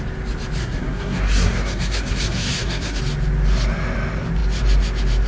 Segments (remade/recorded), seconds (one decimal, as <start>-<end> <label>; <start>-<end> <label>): 0.0-0.6 recorded; 0.6-3.0 remade; 3.0-5.3 recorded